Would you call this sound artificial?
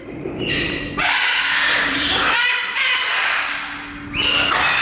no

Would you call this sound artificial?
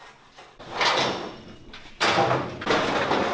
no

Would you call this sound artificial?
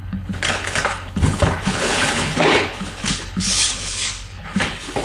yes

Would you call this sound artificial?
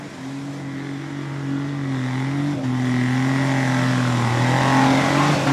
no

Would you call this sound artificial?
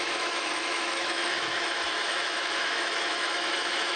yes